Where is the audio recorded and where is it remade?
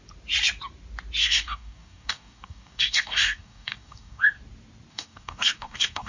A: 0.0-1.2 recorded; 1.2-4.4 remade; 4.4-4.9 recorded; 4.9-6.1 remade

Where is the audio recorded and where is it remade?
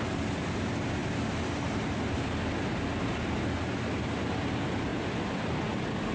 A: 0.0-1.0 recorded; 1.0-2.3 remade; 2.3-4.9 recorded; 4.9-5.6 remade; 5.6-6.1 recorded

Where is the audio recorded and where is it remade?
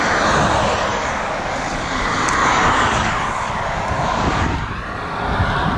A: 0.0-0.9 recorded; 0.9-4.4 remade; 4.4-5.8 recorded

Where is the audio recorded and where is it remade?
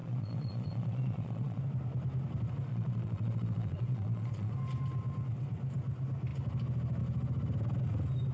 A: 0.0-1.6 remade; 1.6-2.7 recorded; 2.7-4.5 remade; 4.5-8.3 recorded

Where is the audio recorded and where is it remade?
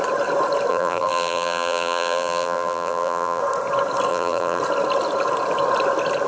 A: 0.0-0.7 recorded; 0.7-3.4 remade; 3.4-4.1 recorded; 4.1-4.6 remade; 4.6-6.3 recorded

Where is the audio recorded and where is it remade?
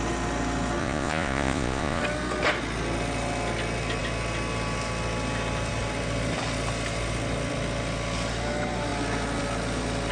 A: 0.0-0.8 recorded; 0.8-2.0 remade; 2.0-10.1 recorded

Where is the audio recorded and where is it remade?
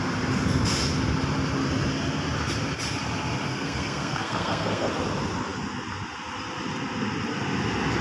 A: 0.0-3.5 recorded; 3.5-4.9 remade; 4.9-8.0 recorded